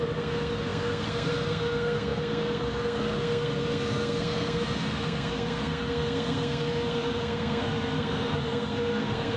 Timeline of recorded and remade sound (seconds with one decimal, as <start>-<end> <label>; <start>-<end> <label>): 0.0-9.4 remade

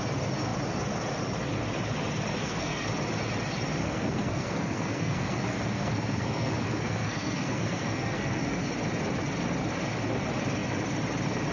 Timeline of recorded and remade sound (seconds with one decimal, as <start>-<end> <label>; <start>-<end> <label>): 0.0-2.4 recorded; 2.4-2.9 remade; 2.9-3.8 recorded; 3.8-8.7 remade; 8.7-11.5 recorded

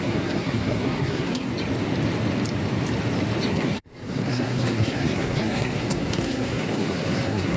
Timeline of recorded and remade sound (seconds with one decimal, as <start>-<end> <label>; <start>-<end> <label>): 0.0-1.5 remade; 1.5-3.5 recorded; 3.5-7.6 remade

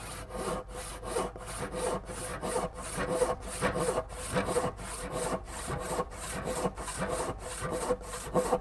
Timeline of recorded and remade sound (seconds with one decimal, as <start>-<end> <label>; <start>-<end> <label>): 0.0-8.6 recorded

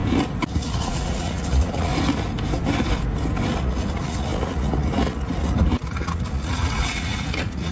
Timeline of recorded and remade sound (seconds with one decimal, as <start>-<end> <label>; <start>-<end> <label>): 0.0-0.5 recorded; 0.5-1.9 remade; 1.9-3.6 recorded; 3.6-7.7 remade

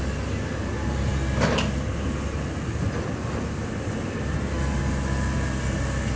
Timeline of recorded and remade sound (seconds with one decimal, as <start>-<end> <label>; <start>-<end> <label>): 0.0-6.2 recorded

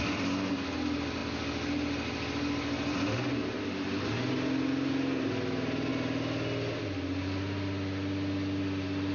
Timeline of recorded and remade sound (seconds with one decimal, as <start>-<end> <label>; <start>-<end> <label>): 0.0-9.1 recorded